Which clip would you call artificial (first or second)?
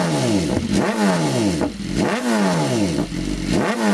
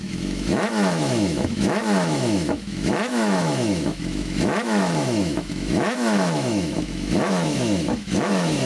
second